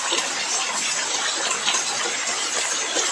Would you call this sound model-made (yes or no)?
no